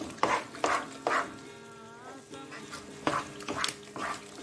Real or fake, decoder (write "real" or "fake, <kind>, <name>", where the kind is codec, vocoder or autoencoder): real